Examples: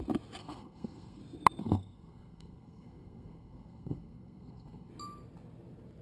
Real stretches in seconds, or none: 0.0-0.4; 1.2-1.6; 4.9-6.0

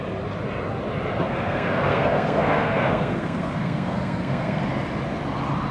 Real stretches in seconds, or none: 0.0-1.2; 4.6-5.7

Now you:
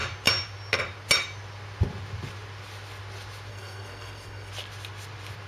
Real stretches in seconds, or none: 0.0-3.5; 4.5-5.5

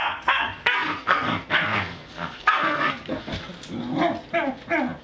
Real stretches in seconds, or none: 3.3-5.0

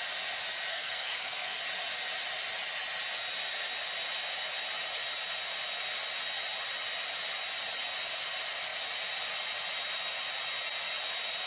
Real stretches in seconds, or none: 0.0-0.7; 1.6-11.5

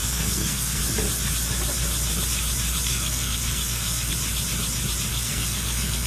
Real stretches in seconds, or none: 0.8-2.9; 4.1-5.1

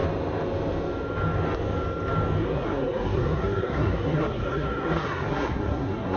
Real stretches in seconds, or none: 0.0-2.4